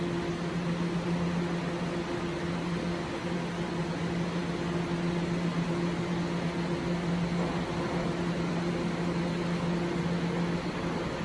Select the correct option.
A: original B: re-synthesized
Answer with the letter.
A